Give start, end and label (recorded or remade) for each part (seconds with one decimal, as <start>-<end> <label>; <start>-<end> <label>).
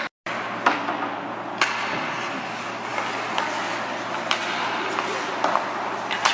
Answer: 0.0-6.3 recorded